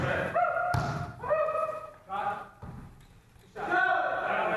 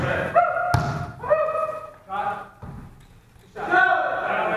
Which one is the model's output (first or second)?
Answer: first